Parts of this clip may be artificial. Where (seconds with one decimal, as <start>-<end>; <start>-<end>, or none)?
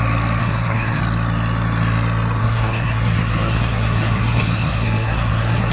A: 0.4-1.0; 2.4-5.7